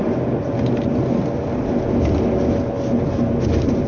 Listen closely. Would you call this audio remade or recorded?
recorded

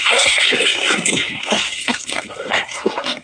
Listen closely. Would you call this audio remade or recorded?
remade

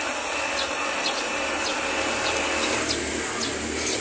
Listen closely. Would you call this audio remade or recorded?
recorded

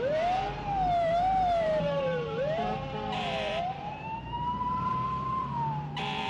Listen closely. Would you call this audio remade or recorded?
remade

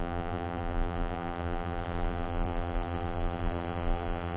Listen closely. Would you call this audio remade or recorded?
remade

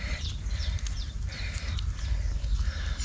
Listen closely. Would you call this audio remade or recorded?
recorded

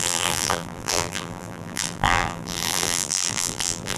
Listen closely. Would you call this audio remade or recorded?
remade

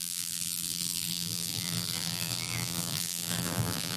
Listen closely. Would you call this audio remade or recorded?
remade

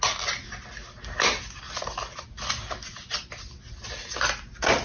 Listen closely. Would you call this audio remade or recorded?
recorded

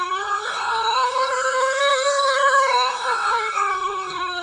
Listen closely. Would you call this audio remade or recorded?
remade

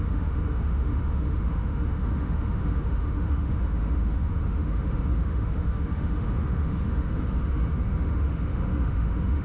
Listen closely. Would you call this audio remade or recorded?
remade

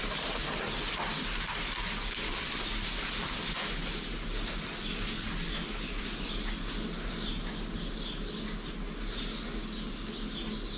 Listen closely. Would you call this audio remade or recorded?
recorded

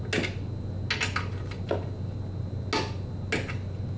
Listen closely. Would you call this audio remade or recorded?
recorded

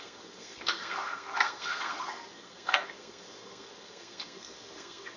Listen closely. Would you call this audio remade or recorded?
remade